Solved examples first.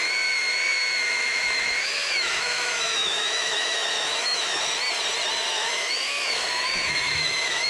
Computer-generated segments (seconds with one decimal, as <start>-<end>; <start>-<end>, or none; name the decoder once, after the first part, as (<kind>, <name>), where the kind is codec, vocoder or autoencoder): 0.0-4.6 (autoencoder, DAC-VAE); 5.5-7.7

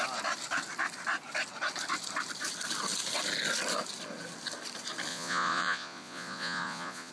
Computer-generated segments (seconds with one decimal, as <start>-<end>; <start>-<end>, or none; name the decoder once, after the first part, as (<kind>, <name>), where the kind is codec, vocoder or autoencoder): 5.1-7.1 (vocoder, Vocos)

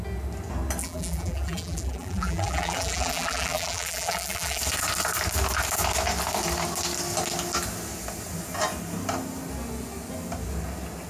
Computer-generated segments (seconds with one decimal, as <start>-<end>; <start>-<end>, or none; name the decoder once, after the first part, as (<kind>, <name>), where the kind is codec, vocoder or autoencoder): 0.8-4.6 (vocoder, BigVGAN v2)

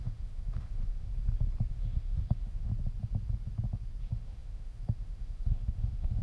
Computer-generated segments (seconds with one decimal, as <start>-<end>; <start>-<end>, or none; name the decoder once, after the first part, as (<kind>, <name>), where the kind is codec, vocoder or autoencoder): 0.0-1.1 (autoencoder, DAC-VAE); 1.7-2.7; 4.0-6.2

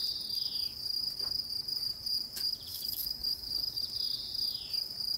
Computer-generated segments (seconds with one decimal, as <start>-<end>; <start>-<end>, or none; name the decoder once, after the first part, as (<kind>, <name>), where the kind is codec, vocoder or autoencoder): 2.7-3.8 (codec, DAC)

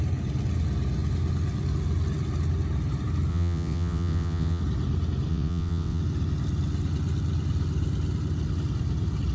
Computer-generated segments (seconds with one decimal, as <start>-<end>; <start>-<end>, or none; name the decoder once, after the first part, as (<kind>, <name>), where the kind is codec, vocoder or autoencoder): 3.3-4.6 (vocoder, WaveNeXt); 5.3-6.0

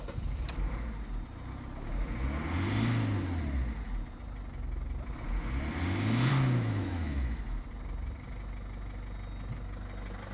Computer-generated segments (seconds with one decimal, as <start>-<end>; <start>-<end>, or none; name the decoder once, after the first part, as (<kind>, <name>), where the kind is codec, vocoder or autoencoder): 6.3-7.4 (autoencoder, DAC-VAE)